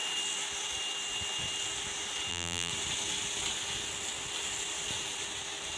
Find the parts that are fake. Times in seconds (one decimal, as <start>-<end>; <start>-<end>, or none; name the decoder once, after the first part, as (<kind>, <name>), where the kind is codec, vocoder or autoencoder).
2.3-2.7 (vocoder, BigVGAN v2)